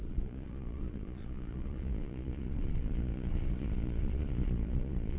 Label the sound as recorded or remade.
remade